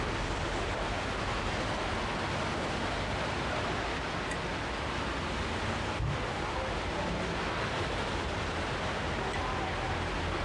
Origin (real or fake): real